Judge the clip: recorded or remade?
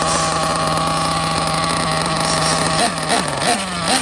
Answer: recorded